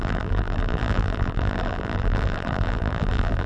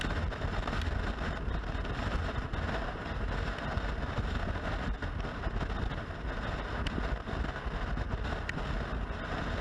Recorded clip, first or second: second